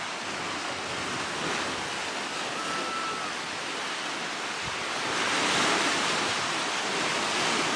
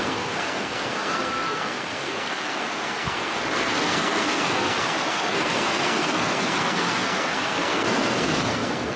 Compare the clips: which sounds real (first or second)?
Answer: first